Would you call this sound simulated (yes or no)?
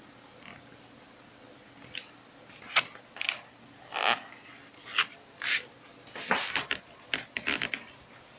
no